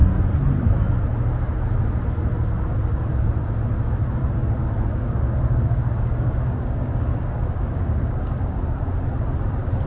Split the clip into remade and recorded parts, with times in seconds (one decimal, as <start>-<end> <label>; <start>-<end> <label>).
0.0-4.9 recorded; 4.9-8.9 remade; 8.9-9.9 recorded